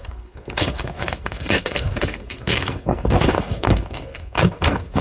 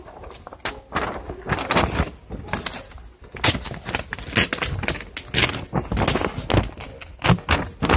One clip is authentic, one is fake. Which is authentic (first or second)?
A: second